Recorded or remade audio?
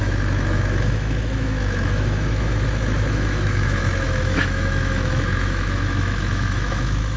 remade